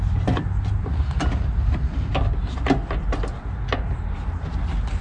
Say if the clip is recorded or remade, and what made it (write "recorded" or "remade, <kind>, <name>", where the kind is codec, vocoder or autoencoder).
recorded